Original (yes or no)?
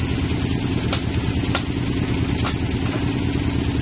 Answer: yes